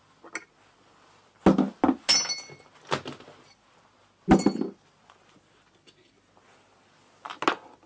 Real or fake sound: real